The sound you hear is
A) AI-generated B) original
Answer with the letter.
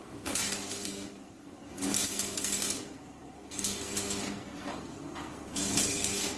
A